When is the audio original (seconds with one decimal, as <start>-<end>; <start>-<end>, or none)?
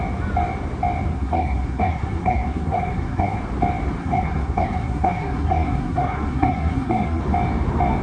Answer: 0.0-1.1; 3.4-4.0; 7.2-8.0